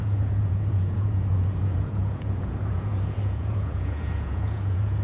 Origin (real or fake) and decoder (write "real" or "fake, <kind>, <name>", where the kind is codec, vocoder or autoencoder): fake, vocoder, Vocos